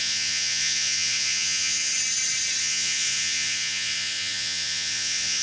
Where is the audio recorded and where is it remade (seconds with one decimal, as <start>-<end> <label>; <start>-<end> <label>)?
0.0-1.9 remade; 1.9-2.6 recorded; 2.6-5.4 remade